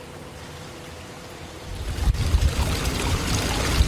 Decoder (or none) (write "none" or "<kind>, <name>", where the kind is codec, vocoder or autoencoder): vocoder, BigVGAN v2